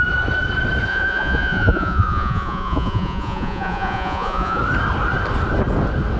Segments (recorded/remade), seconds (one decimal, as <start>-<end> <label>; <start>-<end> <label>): 0.0-0.9 recorded; 0.9-4.6 remade; 4.6-6.2 recorded